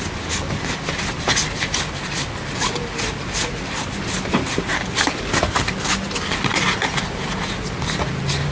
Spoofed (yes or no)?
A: no